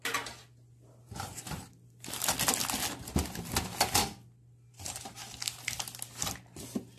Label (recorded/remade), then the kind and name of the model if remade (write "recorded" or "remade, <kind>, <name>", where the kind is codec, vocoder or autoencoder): recorded